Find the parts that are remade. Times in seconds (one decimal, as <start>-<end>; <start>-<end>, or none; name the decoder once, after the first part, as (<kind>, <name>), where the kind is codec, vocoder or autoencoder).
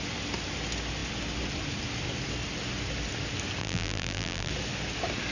3.6-4.5 (vocoder, BigVGAN v2)